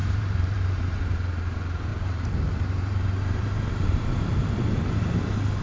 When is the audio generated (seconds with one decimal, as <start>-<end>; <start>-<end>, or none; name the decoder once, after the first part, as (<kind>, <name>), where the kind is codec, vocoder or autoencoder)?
0.0-0.8 (vocoder, BigVGAN v2); 1.9-5.0